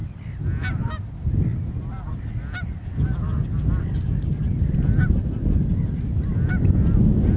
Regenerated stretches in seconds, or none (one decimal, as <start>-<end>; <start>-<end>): none